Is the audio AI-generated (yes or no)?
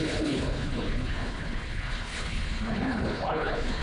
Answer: yes